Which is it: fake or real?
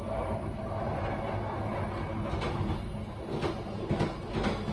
real